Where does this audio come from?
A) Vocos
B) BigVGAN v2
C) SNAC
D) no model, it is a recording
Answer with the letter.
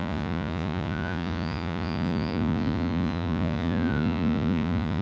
A